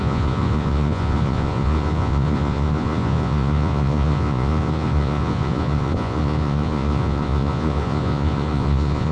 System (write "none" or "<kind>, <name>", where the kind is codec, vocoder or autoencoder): vocoder, Vocos